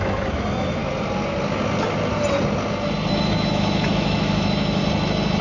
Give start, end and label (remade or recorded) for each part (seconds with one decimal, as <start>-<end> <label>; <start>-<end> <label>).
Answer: 0.0-0.8 remade; 0.8-3.1 recorded; 3.1-4.8 remade; 4.8-5.4 recorded